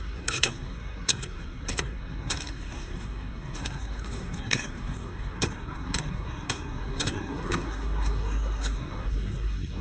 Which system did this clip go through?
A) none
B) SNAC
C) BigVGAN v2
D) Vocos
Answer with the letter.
B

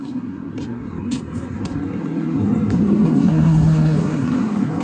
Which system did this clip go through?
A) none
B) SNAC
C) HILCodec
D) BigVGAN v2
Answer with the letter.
B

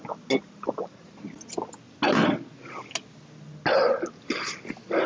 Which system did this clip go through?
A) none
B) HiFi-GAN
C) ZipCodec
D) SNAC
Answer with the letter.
A